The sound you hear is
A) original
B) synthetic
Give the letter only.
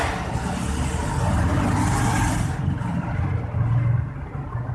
A